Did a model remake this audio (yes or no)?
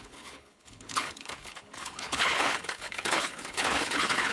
yes